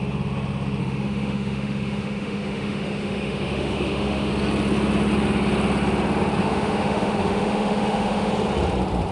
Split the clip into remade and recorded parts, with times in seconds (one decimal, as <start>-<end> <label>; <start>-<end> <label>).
0.0-0.8 recorded; 0.8-4.3 remade; 4.3-6.4 recorded; 6.4-8.3 remade; 8.3-9.1 recorded